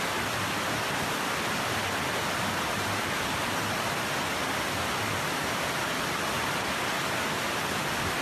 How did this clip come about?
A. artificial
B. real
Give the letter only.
B